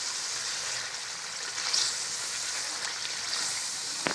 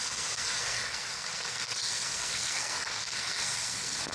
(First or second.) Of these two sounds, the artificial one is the second